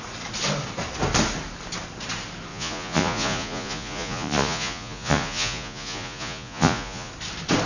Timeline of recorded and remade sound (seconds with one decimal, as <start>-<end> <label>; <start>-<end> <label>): 0.0-2.5 recorded; 2.5-7.1 remade; 7.1-7.7 recorded